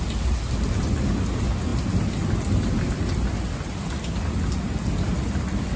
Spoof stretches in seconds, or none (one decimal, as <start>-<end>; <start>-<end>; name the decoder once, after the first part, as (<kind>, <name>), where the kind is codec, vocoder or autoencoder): none

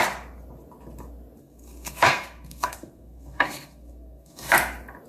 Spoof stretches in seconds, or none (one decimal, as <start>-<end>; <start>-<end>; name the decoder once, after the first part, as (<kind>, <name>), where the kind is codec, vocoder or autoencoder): 1.4-4.5 (codec, SNAC)

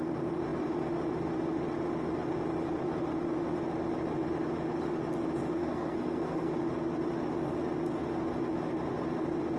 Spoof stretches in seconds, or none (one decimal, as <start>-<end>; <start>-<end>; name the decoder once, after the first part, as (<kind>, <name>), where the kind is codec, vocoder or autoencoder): 5.6-6.5 (codec, SNAC)